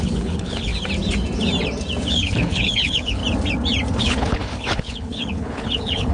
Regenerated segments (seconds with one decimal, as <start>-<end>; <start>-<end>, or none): 0.0-0.7; 2.1-3.2; 4.0-6.1